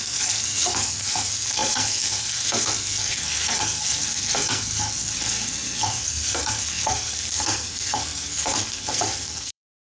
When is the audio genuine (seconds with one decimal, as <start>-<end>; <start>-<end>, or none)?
none